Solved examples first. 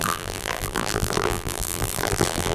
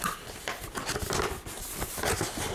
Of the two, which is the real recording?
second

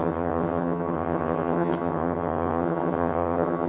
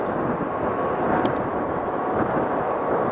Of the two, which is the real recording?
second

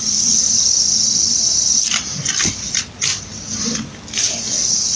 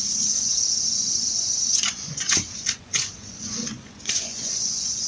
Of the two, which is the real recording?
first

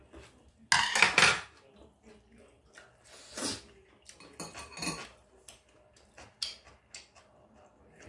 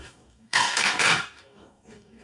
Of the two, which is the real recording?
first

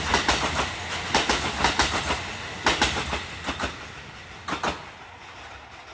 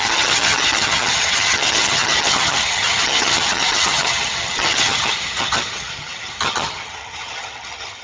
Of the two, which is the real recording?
first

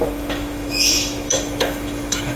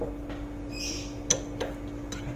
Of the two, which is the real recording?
second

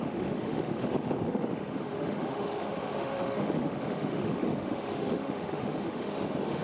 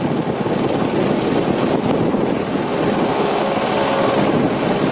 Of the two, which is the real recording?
second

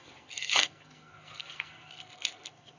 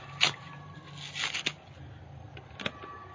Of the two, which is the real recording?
second